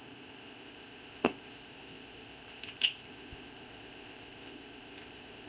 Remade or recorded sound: remade